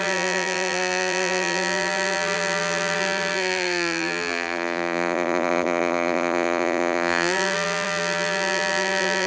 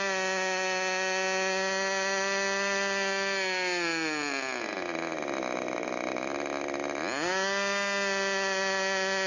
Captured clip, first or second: second